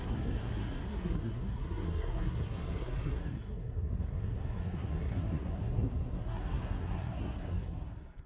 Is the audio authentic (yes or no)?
no